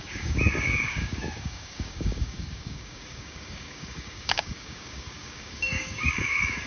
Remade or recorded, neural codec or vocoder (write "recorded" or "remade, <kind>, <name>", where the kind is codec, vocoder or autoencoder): remade, codec, DAC